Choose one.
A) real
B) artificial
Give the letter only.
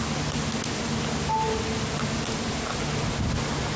A